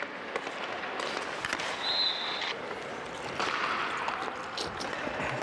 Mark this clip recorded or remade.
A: recorded